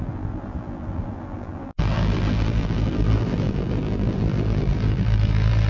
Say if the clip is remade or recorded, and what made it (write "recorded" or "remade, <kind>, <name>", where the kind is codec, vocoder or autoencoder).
remade, vocoder, BigVGAN v2